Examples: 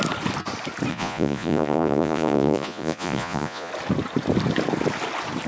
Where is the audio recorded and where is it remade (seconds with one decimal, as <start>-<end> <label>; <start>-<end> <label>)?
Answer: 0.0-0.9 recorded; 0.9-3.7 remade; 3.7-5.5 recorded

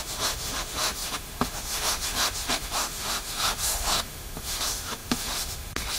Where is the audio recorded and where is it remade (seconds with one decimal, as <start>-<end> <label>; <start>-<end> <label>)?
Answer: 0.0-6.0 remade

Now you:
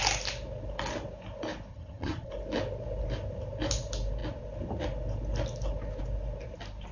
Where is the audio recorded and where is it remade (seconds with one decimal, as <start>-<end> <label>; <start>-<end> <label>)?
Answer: 0.0-1.7 recorded; 1.7-2.3 remade; 2.3-6.9 recorded

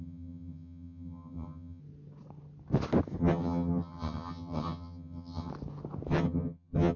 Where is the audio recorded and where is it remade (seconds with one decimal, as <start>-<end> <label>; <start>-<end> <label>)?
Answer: 0.0-1.8 remade; 1.8-3.2 recorded; 3.2-5.5 remade; 5.5-6.1 recorded; 6.1-7.0 remade

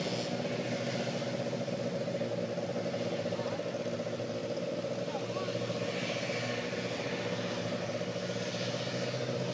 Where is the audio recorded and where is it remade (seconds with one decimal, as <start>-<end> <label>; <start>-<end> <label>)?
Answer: 0.0-9.5 recorded